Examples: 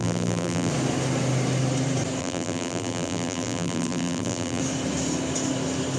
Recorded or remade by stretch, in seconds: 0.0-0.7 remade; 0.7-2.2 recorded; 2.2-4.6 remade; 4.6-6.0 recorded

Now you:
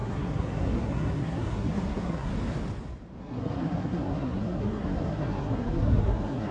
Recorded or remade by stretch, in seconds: 0.0-2.3 remade; 2.3-3.2 recorded; 3.2-6.5 remade